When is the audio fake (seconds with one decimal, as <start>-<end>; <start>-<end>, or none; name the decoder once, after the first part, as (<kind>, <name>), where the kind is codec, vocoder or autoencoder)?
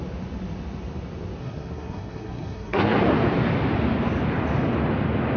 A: 1.4-3.0 (codec, SNAC)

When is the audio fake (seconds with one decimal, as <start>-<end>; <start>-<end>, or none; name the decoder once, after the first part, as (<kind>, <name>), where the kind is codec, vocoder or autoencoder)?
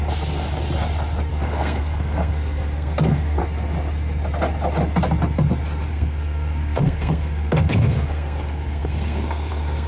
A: 1.3-3.4 (codec, SNAC); 5.9-9.9